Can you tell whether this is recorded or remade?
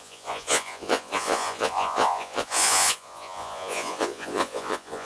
remade